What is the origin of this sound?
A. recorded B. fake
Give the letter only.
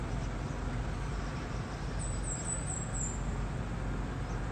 A